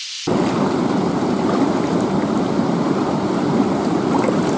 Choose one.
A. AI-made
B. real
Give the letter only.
B